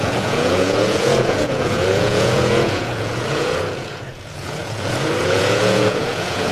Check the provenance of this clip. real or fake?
fake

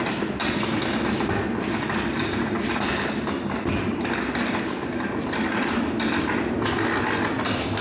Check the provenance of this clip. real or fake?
real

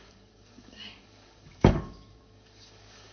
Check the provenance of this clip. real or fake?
fake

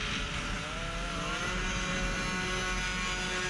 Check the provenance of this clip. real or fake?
real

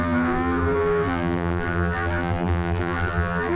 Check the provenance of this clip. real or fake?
fake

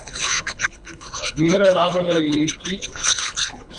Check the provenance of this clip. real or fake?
fake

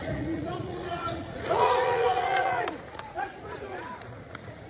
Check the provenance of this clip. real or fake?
fake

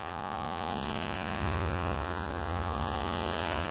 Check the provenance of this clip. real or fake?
fake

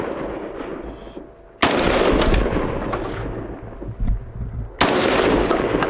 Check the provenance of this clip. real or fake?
real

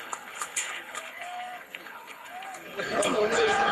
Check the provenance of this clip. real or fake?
fake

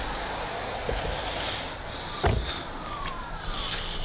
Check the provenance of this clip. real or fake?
real